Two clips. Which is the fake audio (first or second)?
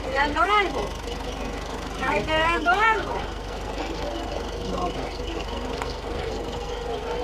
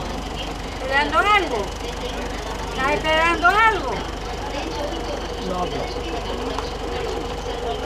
first